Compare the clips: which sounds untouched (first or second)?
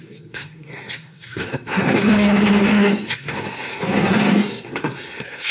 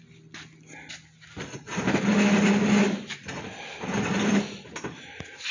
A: second